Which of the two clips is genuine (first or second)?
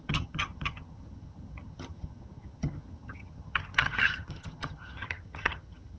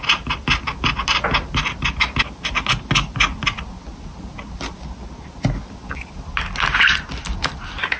second